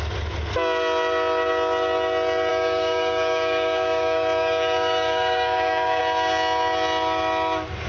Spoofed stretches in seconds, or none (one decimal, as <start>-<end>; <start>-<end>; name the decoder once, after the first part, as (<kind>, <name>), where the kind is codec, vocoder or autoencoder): 2.5-6.0 (codec, DAC)